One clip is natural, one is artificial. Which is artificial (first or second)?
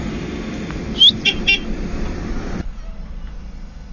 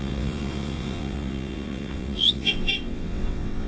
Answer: second